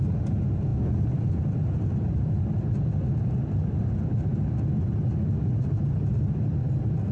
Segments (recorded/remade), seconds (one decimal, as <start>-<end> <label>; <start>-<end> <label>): 0.0-7.1 recorded